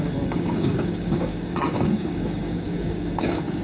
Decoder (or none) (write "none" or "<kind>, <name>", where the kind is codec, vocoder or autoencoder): codec, DAC